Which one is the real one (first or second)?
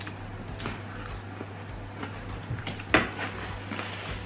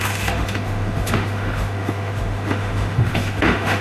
first